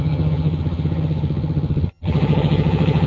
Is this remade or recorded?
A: remade